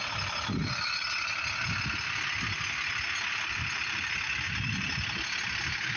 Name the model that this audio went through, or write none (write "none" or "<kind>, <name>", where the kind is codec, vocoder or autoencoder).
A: none